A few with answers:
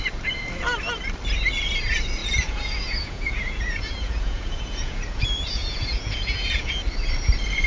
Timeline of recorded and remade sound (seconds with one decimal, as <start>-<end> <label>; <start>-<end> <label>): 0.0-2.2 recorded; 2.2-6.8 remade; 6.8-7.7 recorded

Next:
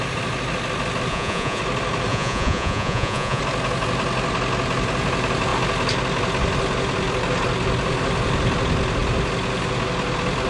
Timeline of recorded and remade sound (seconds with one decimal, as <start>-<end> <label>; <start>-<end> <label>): 0.0-1.1 recorded; 1.1-1.6 remade; 1.6-2.1 recorded; 2.1-3.4 remade; 3.4-10.5 recorded

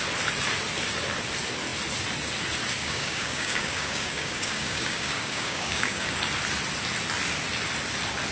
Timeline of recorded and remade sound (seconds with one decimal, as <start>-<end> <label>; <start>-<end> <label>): 0.0-2.8 recorded; 2.8-6.2 remade; 6.2-8.3 recorded

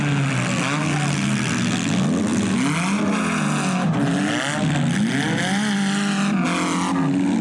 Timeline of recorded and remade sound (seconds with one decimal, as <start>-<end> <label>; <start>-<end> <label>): 0.0-7.4 recorded